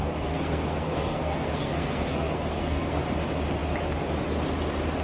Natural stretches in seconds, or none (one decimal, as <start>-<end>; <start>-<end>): 3.0-5.0